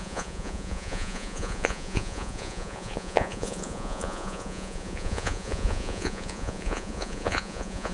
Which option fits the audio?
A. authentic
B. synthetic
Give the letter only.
B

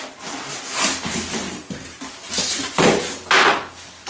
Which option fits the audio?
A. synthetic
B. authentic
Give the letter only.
B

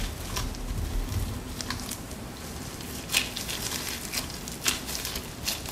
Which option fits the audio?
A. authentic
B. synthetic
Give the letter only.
A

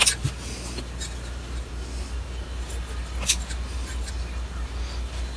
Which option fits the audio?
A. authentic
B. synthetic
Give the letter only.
A